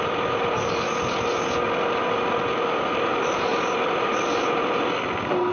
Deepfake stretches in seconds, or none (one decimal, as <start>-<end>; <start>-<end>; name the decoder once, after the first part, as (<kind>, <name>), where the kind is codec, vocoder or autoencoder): none